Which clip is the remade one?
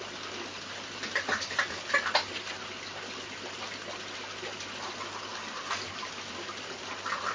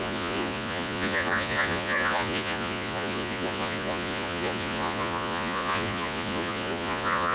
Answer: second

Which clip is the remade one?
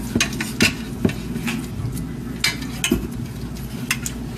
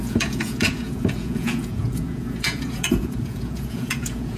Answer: second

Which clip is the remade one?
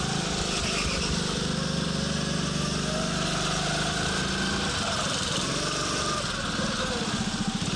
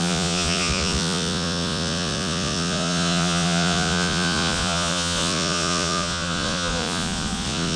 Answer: second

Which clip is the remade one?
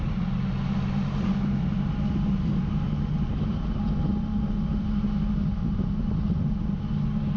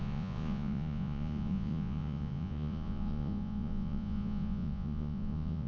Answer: second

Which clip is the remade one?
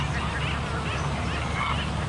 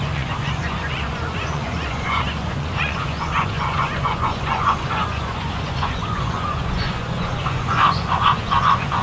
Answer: second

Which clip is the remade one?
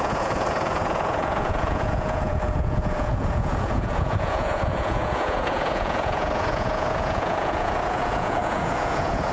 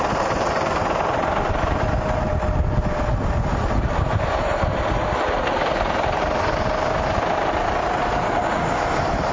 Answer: first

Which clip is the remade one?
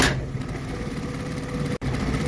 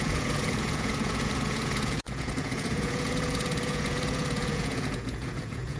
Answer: second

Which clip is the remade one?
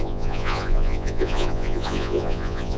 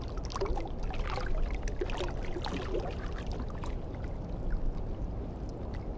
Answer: first